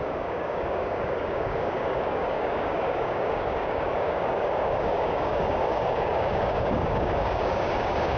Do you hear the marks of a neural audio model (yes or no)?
yes